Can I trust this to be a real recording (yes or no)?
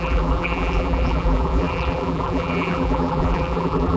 no